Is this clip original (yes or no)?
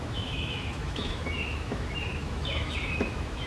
no